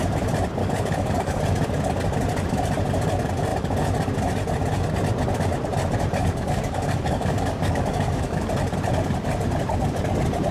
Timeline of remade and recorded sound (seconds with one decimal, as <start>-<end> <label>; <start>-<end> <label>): 0.0-0.6 recorded; 0.6-1.4 remade; 1.4-6.2 recorded; 6.2-8.5 remade; 8.5-10.5 recorded